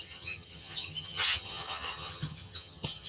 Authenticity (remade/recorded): remade